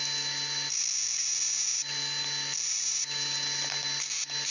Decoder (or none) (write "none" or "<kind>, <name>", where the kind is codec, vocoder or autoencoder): none